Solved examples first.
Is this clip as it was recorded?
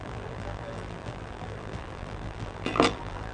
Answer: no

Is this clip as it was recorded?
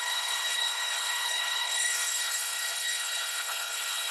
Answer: no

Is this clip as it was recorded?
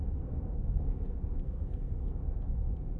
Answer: no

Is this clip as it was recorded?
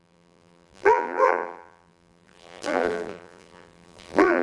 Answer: no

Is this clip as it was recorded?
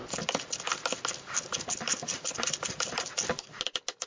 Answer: yes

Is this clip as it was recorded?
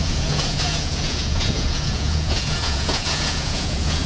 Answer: no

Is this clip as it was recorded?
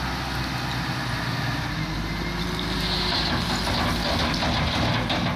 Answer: yes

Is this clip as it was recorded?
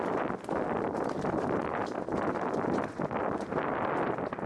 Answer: yes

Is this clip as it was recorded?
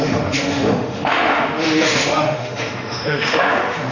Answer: no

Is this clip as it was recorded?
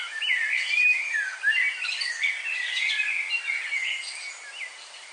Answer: yes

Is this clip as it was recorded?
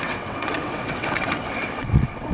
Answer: no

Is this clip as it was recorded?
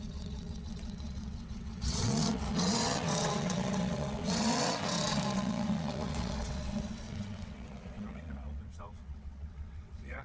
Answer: no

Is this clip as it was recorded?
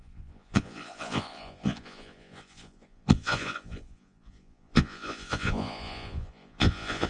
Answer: no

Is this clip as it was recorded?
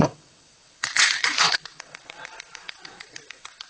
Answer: no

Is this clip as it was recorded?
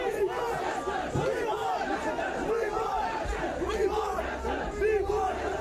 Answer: yes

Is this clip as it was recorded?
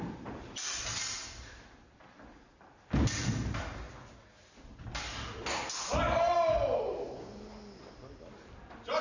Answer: yes